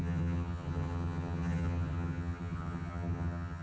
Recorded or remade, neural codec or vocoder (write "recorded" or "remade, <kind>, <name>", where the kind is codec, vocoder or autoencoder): remade, vocoder, HiFi-GAN